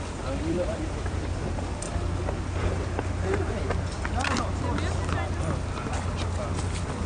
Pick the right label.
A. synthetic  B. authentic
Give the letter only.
B